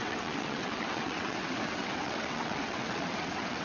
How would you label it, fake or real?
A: fake